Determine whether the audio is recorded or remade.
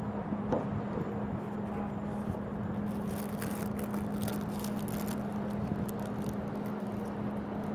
recorded